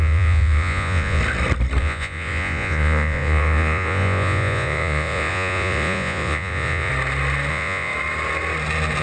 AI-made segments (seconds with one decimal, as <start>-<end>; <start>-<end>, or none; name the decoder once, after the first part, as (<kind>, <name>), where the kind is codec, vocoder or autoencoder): 0.0-1.2 (vocoder, Vocos); 1.8-6.9; 7.5-7.9